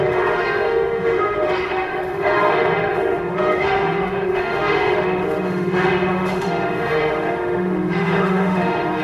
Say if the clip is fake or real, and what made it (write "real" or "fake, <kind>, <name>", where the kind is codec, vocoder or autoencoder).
fake, autoencoder, DAC-VAE